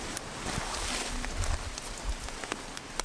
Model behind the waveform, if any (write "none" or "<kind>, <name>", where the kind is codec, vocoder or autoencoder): none